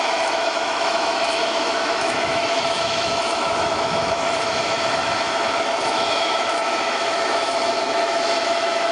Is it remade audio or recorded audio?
remade